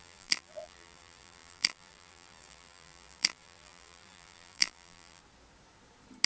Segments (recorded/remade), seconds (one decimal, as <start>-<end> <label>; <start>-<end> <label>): 0.0-5.2 remade; 5.2-6.3 recorded